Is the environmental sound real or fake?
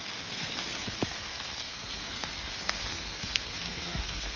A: fake